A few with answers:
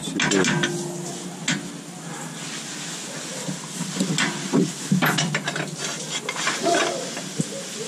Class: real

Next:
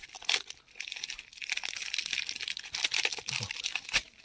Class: real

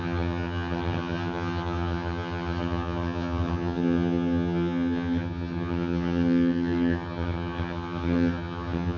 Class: fake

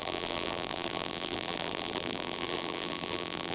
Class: fake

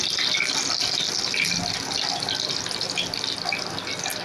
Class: real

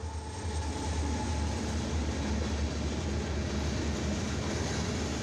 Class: real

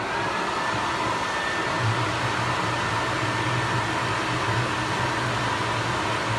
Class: real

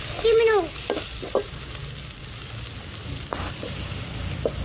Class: real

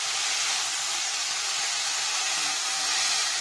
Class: real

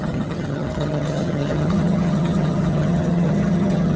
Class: fake